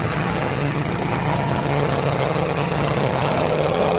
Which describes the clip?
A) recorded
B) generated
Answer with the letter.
B